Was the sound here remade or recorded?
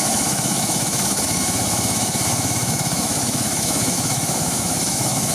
remade